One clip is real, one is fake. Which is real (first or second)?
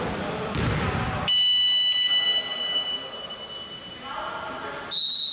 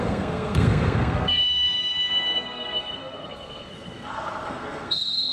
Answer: first